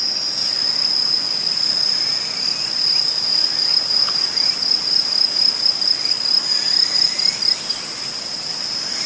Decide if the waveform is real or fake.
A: real